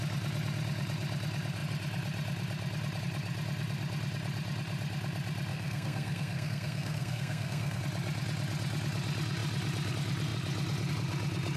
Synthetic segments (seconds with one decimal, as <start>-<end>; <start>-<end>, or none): 5.5-7.8